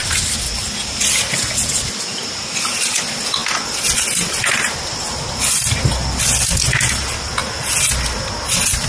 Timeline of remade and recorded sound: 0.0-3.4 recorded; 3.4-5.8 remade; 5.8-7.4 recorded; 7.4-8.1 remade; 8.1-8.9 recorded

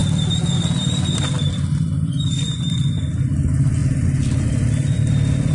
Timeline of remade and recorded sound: 0.0-3.1 recorded; 3.1-3.8 remade; 3.8-4.4 recorded; 4.4-5.5 remade